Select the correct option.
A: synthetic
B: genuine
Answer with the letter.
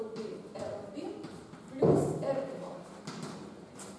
B